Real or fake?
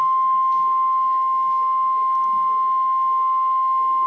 real